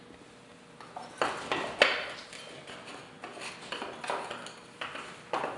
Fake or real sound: real